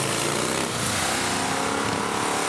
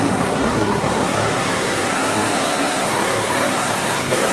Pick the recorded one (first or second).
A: first